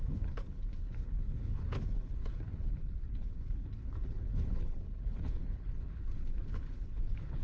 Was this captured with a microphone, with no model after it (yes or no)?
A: no